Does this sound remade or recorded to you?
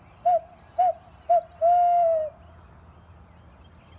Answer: recorded